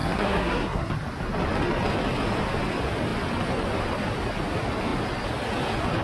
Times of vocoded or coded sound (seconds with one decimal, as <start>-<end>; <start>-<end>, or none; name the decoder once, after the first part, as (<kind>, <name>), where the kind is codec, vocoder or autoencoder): 0.0-0.9 (codec, SNAC)